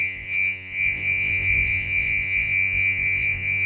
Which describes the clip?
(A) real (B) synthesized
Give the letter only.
B